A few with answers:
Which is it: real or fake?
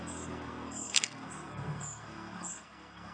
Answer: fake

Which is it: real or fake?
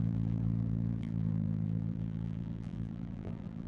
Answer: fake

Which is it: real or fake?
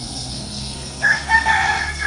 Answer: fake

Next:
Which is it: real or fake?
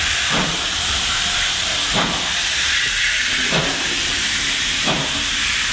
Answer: fake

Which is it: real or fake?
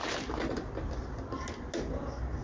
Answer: real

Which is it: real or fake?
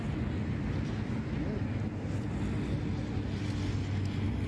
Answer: real